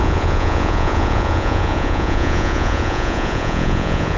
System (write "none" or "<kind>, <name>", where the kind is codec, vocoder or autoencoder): vocoder, Vocos